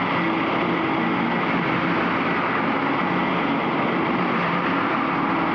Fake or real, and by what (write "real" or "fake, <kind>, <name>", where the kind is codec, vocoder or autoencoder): real